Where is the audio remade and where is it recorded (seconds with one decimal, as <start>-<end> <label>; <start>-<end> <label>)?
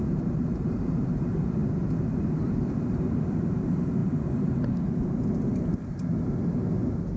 0.0-6.1 remade; 6.1-7.2 recorded